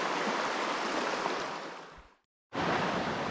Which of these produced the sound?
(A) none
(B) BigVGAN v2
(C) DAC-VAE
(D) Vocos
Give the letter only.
A